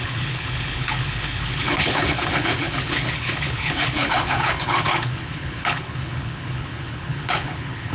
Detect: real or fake fake